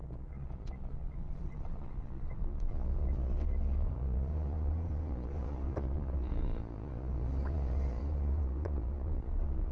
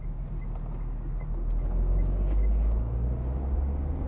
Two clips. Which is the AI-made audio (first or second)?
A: first